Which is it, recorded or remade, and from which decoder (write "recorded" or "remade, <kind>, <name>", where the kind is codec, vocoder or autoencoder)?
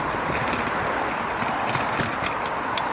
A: recorded